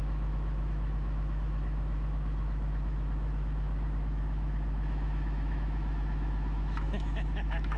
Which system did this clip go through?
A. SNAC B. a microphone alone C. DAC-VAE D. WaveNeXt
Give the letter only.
C